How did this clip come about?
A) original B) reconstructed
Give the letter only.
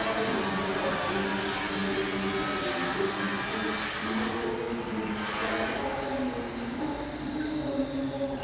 A